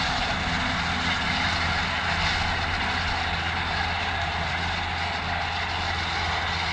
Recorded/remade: recorded